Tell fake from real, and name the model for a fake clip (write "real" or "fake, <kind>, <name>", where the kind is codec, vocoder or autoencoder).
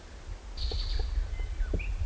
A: real